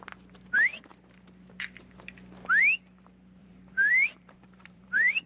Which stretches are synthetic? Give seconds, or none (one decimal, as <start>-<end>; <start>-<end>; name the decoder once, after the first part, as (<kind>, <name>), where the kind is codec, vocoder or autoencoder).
3.4-5.3 (vocoder, BigVGAN v2)